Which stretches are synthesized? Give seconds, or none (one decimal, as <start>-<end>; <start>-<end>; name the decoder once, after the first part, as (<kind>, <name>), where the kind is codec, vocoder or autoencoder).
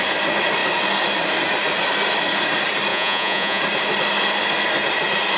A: 2.9-3.6 (vocoder, Vocos)